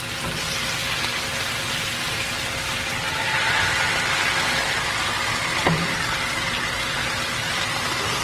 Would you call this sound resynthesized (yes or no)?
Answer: no